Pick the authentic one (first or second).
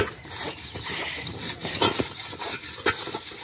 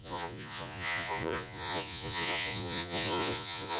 first